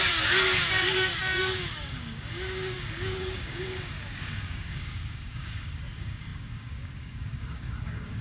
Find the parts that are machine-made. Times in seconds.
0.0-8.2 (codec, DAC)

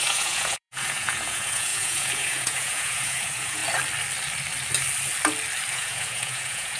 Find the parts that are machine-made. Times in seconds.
0.0-3.6 (vocoder, Vocos); 5.7-6.8

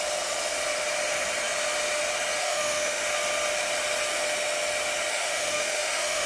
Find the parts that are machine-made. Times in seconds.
2.4-3.0 (autoencoder, DAC-VAE); 5.1-6.3

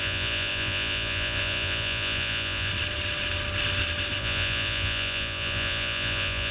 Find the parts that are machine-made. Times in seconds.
0.0-2.7 (vocoder, Vocos); 4.2-6.5

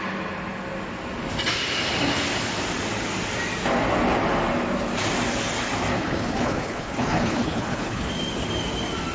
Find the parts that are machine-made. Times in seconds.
5.9-8.1 (codec, HILCodec)

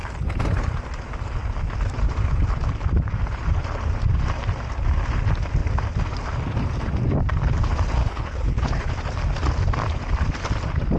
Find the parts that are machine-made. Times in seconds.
8.0-8.9 (codec, HILCodec)

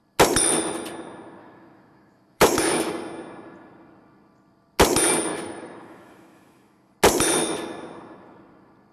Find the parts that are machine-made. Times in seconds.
1.4-2.9 (autoencoder, DAC-VAE); 5.3-6.9

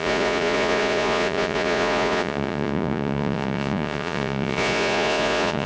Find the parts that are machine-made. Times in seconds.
0.0-5.7 (vocoder, Vocos)